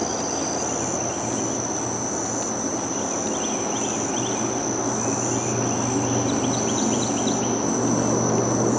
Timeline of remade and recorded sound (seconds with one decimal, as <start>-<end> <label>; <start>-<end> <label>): 0.0-8.8 recorded